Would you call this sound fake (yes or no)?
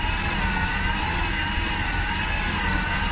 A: no